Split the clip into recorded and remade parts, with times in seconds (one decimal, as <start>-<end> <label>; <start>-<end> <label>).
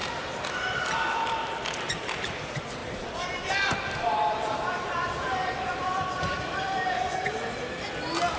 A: 0.0-1.5 remade; 1.5-2.8 recorded; 2.8-7.3 remade; 7.3-8.4 recorded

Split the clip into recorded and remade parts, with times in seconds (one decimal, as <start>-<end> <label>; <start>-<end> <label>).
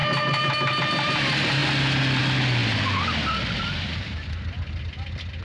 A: 0.0-5.4 recorded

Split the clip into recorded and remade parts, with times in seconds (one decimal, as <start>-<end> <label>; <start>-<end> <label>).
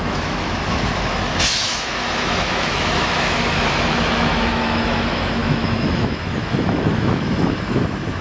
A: 0.0-8.2 remade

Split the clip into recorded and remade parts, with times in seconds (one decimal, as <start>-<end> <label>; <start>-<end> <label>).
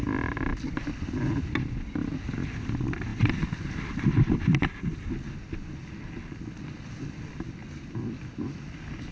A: 0.0-9.1 recorded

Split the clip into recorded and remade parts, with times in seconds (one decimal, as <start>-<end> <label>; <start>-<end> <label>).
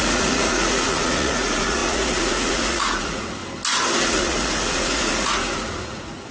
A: 0.0-3.4 remade; 3.4-4.0 recorded; 4.0-6.3 remade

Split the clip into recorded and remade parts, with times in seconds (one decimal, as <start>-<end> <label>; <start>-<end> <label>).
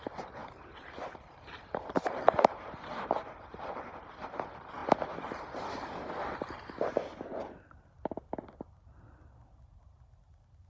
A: 0.0-0.4 recorded; 0.4-4.0 remade; 4.0-10.7 recorded